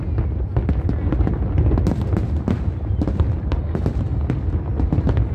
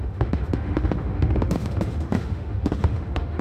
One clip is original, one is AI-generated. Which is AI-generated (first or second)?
second